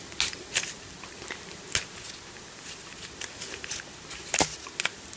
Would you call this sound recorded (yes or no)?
yes